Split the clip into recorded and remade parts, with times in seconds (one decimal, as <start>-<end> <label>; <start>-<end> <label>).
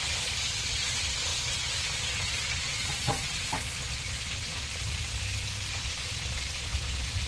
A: 0.0-4.7 remade; 4.7-5.7 recorded; 5.7-7.3 remade